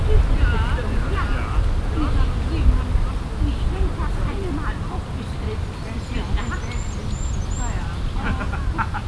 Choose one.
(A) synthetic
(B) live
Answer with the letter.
B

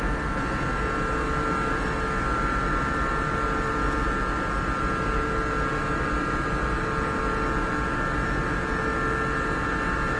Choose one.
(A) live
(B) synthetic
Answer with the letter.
A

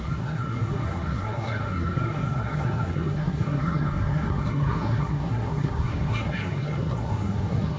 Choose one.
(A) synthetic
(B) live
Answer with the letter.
A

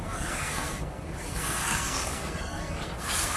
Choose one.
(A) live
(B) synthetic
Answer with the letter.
B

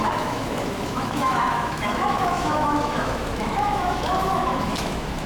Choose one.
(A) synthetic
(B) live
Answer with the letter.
A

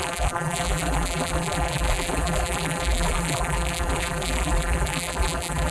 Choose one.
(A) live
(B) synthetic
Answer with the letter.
B